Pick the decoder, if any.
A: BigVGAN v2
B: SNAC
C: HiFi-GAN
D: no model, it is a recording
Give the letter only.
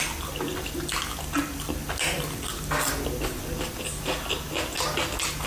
D